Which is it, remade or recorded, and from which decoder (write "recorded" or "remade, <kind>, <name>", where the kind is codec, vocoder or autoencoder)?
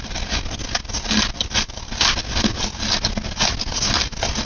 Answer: recorded